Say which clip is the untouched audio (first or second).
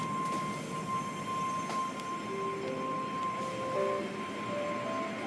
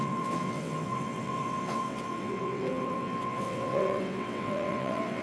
first